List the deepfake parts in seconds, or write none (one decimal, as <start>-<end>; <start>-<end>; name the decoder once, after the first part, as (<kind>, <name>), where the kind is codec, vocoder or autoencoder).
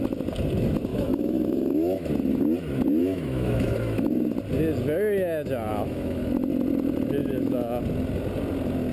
0.9-2.1 (autoencoder, DAC-VAE); 3.0-4.1; 5.7-6.3; 7.2-7.8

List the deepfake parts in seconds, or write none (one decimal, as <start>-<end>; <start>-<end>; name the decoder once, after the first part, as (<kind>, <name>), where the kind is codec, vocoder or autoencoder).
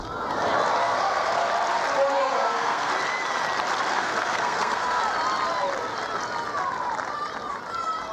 0.8-1.5 (codec, SNAC); 2.2-2.9; 3.9-5.0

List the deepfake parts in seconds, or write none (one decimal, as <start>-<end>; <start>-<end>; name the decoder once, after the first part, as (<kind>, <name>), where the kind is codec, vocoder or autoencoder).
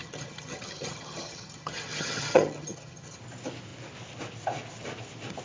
0.0-3.2 (vocoder, HiFi-GAN)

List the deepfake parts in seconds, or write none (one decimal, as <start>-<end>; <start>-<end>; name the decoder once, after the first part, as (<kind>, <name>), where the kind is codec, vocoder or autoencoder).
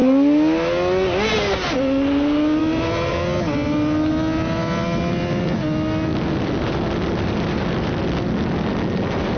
none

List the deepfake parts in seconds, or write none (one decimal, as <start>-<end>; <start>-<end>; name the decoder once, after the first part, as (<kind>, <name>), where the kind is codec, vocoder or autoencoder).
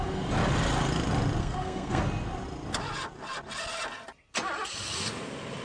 1.4-2.0 (codec, SNAC)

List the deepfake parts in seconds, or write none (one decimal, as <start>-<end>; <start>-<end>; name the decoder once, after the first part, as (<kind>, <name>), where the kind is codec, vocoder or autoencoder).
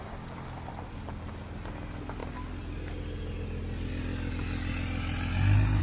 none